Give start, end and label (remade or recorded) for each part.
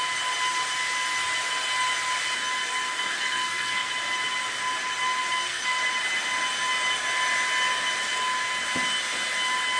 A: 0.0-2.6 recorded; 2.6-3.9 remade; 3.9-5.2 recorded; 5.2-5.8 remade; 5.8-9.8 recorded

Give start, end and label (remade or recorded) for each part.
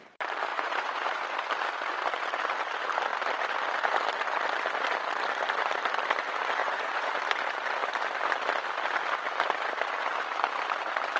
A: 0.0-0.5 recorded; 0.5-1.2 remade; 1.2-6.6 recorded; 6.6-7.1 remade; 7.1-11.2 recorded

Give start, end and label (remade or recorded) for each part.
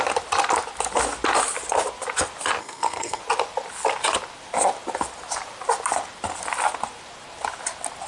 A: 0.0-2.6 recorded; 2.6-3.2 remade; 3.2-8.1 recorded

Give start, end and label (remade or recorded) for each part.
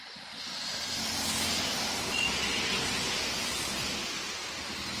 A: 0.0-5.0 recorded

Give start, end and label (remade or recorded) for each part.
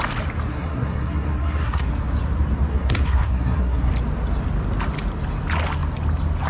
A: 0.0-0.5 recorded; 0.5-1.9 remade; 1.9-2.7 recorded; 2.7-3.9 remade; 3.9-6.5 recorded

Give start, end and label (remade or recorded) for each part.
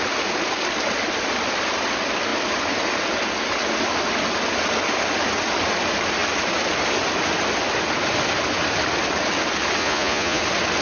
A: 0.0-9.8 recorded; 9.8-10.4 remade; 10.4-10.8 recorded